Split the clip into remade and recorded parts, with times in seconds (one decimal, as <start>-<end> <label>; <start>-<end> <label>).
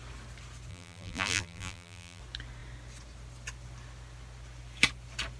0.0-0.7 recorded; 0.7-2.2 remade; 2.2-5.4 recorded